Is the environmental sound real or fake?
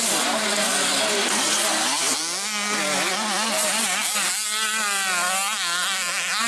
real